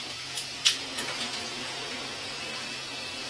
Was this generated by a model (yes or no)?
yes